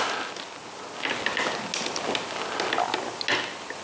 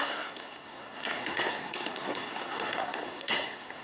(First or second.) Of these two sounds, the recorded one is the first